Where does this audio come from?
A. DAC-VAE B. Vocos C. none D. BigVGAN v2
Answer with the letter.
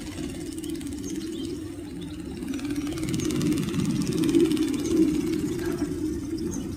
C